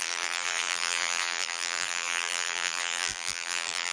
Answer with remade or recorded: remade